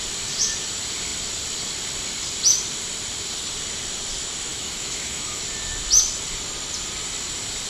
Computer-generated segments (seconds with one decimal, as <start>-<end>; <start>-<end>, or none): 4.5-5.4